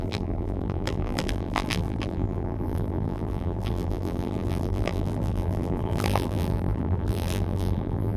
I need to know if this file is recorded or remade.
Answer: remade